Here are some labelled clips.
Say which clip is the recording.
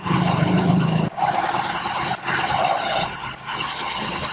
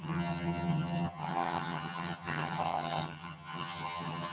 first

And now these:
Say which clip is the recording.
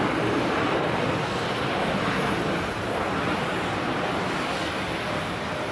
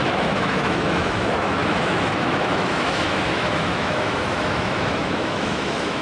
first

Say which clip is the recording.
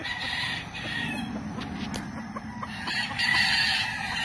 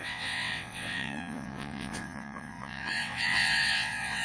first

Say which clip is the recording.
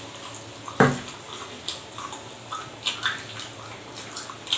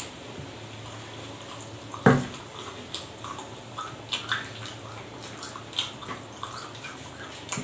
first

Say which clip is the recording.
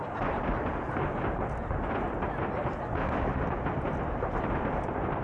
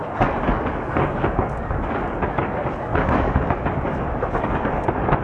first